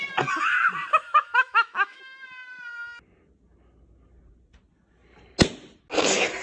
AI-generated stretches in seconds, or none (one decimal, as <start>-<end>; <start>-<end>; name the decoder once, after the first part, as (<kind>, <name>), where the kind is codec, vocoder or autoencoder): 0.9-2.0 (autoencoder, DAC-VAE)